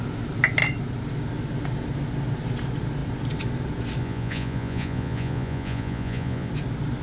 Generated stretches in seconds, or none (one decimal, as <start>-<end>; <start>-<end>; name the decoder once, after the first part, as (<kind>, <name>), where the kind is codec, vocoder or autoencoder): 4.0-6.5 (vocoder, Vocos)